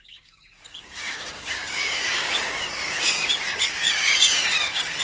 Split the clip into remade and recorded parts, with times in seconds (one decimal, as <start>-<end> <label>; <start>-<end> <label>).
0.0-5.0 remade